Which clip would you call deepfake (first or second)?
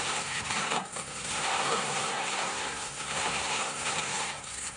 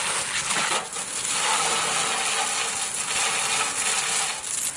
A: first